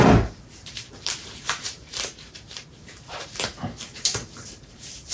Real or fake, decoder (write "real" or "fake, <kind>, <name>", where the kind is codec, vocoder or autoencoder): fake, vocoder, BigVGAN v2